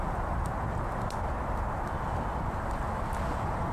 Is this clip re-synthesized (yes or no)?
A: no